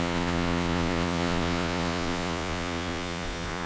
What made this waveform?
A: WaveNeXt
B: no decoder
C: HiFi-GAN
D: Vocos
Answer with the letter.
D